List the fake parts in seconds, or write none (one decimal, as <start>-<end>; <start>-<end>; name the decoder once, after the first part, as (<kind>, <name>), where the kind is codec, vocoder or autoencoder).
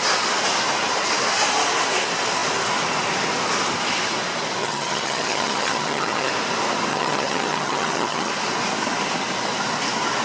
4.6-6.3 (vocoder, HiFi-GAN); 6.9-8.3